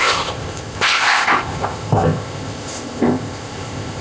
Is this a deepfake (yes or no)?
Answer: yes